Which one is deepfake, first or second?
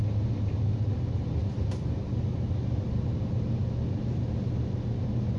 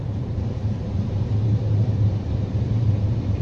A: second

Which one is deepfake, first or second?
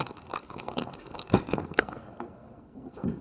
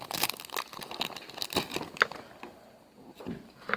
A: first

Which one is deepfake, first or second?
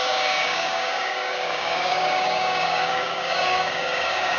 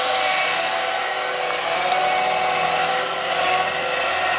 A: first